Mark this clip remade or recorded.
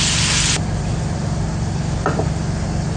recorded